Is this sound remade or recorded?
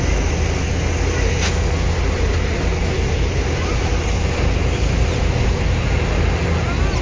recorded